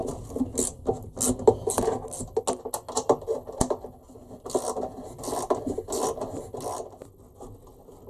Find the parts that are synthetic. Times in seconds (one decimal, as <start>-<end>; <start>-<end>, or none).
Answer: none